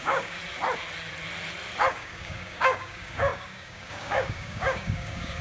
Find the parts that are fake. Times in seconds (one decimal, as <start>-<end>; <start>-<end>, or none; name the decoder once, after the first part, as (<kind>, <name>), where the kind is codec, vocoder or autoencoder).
0.0-0.4 (codec, DAC); 1.9-5.4